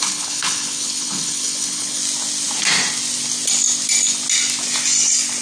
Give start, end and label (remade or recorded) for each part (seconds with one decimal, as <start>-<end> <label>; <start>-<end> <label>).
0.0-2.0 remade; 2.0-5.4 recorded